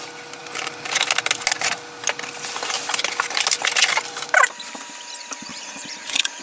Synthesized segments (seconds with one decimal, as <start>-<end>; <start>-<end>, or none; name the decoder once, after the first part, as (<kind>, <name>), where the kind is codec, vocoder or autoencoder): 5.5-6.4 (vocoder, Vocos)